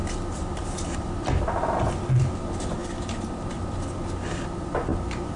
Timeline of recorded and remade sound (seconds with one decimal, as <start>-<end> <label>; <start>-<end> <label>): 0.0-5.4 recorded